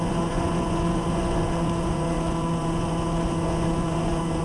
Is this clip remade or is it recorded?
remade